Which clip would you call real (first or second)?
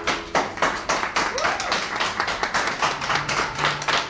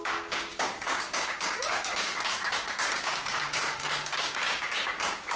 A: first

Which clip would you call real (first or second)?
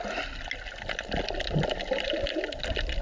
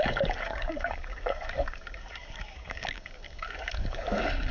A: first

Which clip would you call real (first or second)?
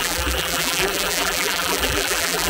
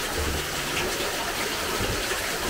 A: second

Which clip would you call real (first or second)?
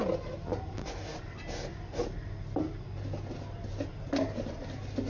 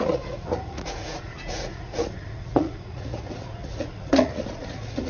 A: first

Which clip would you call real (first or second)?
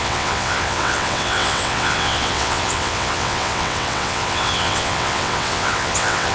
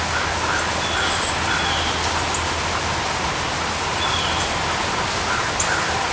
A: second